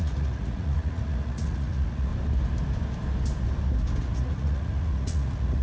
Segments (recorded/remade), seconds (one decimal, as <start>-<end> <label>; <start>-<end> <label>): 0.0-2.1 remade; 2.1-4.0 recorded; 4.0-5.6 remade